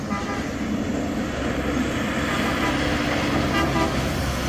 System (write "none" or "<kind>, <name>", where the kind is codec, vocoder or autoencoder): none